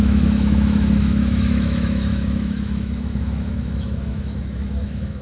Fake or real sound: fake